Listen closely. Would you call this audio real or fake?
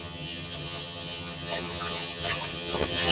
fake